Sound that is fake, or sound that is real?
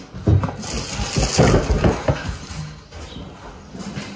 real